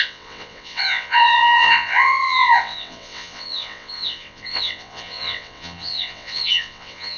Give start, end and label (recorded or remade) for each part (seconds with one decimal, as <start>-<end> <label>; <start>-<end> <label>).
0.0-7.2 remade